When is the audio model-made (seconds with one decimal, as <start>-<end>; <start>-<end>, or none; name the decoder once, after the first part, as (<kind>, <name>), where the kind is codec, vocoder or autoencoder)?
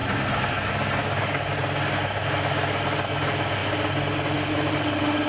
1.0-1.5 (codec, DAC)